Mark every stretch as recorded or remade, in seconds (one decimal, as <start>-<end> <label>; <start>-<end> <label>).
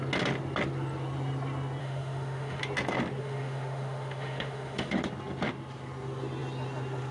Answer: 0.0-1.8 recorded; 1.8-2.6 remade; 2.6-3.2 recorded; 3.2-5.0 remade; 5.0-7.1 recorded